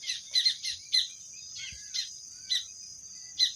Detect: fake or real real